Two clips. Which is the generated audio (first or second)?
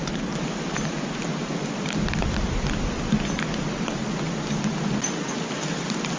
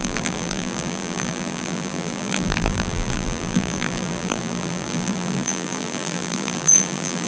second